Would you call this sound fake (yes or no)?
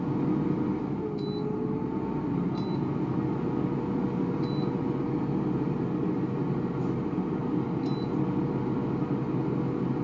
no